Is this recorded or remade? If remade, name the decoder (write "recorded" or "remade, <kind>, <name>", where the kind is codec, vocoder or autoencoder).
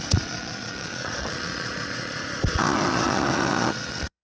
remade, vocoder, Vocos